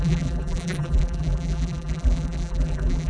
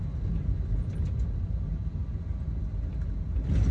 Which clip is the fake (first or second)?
first